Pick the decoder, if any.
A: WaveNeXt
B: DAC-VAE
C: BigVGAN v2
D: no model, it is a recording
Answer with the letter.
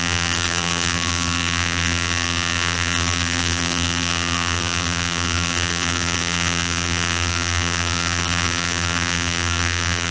C